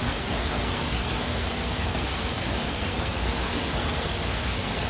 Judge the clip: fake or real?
fake